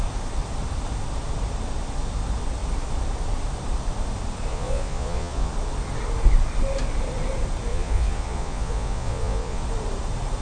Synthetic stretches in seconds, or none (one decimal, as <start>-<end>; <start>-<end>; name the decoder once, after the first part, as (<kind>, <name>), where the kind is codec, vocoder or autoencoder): 4.5-5.5 (vocoder, Vocos); 7.7-9.6